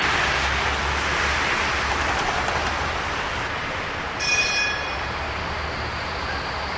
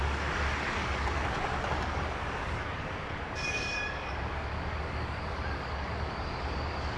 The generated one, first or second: second